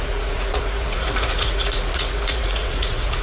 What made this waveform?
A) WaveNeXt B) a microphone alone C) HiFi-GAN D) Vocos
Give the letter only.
D